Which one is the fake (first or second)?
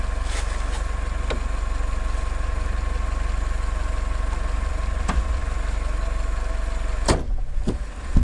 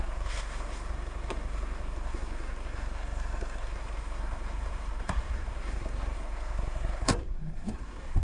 second